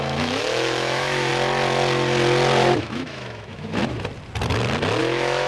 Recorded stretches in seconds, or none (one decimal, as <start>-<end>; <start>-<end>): 1.3-2.8; 3.8-5.0